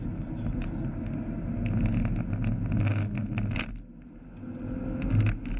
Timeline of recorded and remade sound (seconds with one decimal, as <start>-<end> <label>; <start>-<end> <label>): 0.0-5.6 recorded